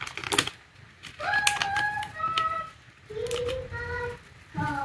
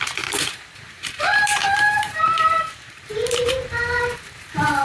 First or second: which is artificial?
second